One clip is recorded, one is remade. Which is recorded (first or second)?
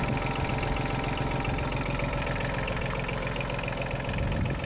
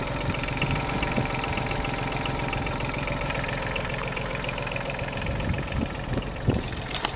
first